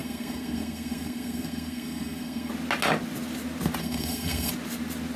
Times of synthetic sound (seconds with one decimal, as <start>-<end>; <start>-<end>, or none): 0.0-2.5; 3.8-4.5